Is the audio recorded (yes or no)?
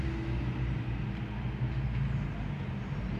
yes